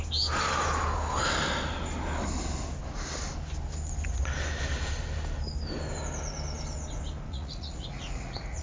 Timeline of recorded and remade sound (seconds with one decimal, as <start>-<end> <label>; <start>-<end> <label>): 0.0-7.3 recorded; 7.3-8.6 remade

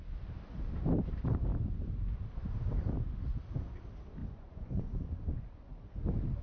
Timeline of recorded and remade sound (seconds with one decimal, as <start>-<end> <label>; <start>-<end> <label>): 0.0-4.2 recorded; 4.2-5.9 remade; 5.9-6.4 recorded

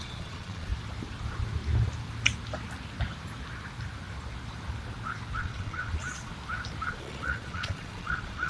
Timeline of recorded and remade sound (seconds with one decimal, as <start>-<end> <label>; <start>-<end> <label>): 0.0-0.7 remade; 0.7-5.4 recorded; 5.4-6.3 remade; 6.3-6.9 recorded; 6.9-8.5 remade

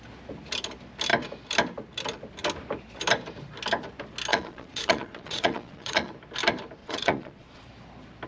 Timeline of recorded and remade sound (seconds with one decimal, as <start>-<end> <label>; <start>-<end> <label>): 0.0-4.3 recorded; 4.3-6.1 remade; 6.1-6.8 recorded; 6.8-7.6 remade; 7.6-8.3 recorded

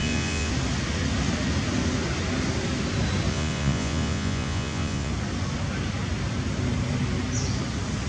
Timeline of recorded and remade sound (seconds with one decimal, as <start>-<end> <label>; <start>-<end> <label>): 0.0-0.5 remade; 0.5-3.3 recorded; 3.3-5.1 remade; 5.1-8.1 recorded